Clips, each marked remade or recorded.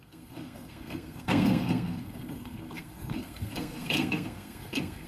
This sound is remade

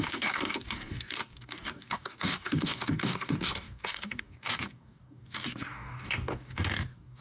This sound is remade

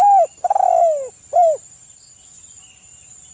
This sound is recorded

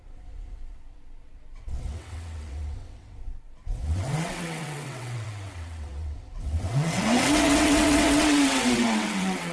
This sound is remade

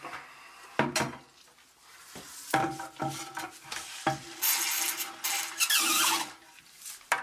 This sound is recorded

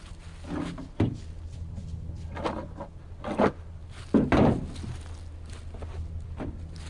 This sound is recorded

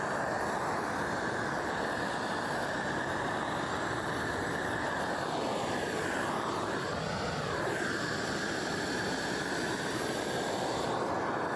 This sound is recorded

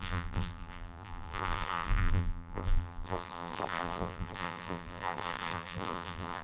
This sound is remade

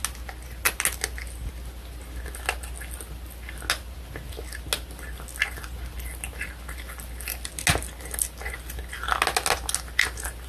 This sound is recorded